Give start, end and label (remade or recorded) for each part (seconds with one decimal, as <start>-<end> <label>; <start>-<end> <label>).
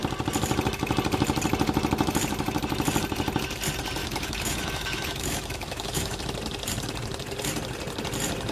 0.0-4.0 recorded; 4.0-6.2 remade; 6.2-8.5 recorded